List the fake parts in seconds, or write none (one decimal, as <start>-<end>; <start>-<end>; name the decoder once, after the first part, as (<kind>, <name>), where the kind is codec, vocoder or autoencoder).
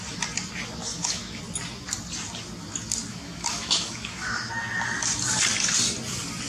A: 0.9-1.4 (autoencoder, DAC-VAE); 3.1-4.5